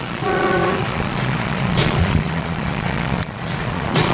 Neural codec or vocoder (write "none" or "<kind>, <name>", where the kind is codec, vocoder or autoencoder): vocoder, Vocos